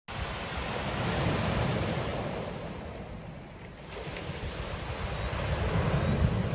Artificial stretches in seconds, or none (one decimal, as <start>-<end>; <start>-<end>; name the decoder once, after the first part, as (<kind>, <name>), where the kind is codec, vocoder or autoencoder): none